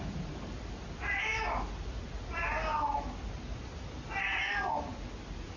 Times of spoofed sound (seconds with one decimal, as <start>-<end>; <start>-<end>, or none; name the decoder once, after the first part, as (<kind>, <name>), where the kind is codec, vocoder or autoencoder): none